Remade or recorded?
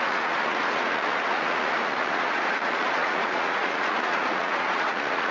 remade